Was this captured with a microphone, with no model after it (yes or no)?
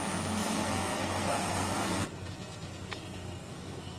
no